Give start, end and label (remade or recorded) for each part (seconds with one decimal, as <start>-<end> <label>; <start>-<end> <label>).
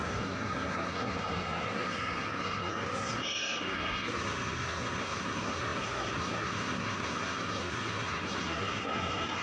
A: 0.0-9.4 remade